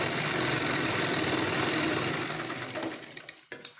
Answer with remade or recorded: recorded